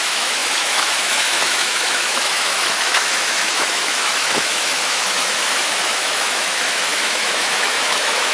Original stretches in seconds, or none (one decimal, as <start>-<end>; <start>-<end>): none